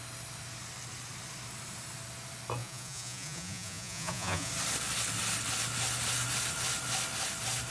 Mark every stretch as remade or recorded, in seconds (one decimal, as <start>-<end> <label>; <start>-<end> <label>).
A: 0.0-2.6 recorded; 2.6-4.5 remade; 4.5-7.7 recorded